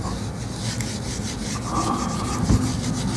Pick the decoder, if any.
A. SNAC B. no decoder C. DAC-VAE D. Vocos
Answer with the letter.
B